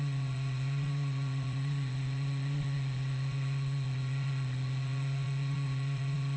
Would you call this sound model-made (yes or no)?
yes